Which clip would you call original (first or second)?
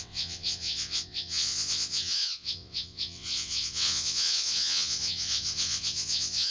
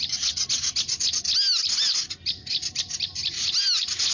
second